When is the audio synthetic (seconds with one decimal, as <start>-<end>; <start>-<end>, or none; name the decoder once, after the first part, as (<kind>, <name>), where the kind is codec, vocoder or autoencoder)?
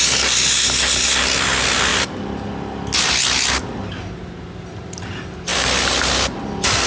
none